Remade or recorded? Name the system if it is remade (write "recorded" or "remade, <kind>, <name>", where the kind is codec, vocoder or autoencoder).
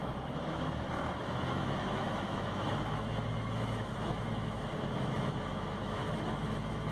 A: remade, autoencoder, DAC-VAE